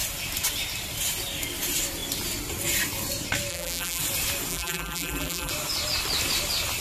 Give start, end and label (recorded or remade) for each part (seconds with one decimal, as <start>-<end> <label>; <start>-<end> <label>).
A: 0.0-3.5 recorded; 3.5-4.0 remade; 4.0-4.5 recorded; 4.5-5.5 remade; 5.5-6.8 recorded